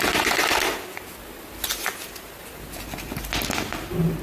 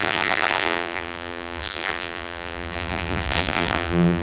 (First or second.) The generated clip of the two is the second